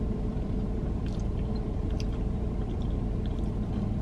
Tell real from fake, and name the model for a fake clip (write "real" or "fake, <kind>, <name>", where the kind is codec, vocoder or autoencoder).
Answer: fake, vocoder, BigVGAN v2